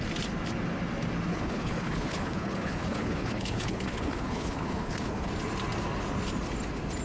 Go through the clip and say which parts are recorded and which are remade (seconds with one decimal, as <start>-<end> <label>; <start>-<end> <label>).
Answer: 0.0-1.3 recorded; 1.3-5.3 remade; 5.3-7.0 recorded